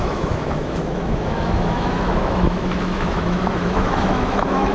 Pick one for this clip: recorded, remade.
remade